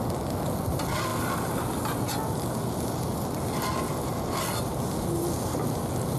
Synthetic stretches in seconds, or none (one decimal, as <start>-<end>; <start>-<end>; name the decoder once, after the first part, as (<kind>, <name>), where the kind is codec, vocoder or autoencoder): none